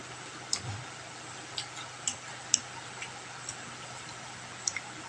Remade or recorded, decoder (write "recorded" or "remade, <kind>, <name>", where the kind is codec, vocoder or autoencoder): recorded